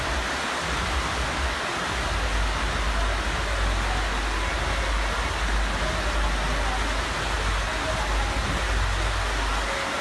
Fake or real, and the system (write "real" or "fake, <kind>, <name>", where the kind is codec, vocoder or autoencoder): real